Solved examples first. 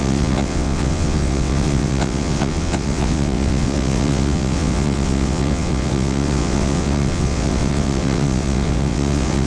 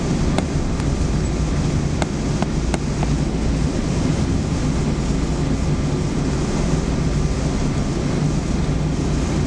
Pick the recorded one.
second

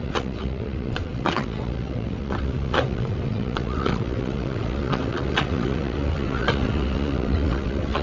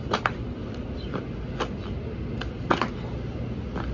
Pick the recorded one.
second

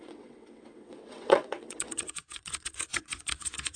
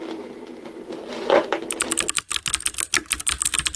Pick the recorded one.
second